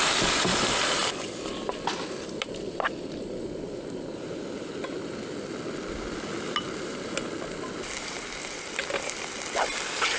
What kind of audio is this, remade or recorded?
remade